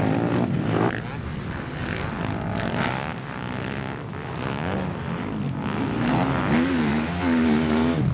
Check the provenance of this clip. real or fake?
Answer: real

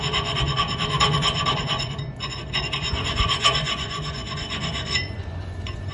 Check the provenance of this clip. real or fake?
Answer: fake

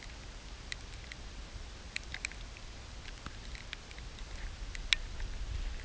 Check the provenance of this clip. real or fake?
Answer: real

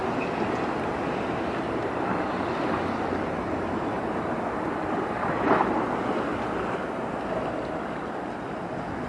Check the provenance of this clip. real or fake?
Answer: real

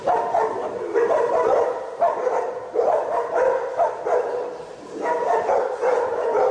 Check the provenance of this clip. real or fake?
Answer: real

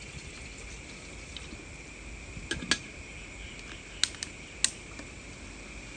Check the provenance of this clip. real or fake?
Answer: real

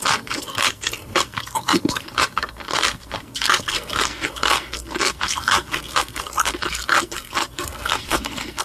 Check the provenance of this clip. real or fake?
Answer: fake